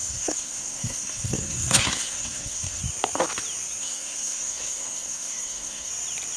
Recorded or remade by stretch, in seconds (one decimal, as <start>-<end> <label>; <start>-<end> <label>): 0.0-2.8 remade; 2.8-3.8 recorded; 3.8-5.9 remade; 5.9-6.4 recorded